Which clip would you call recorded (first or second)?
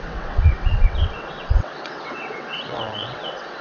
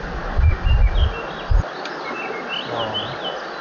second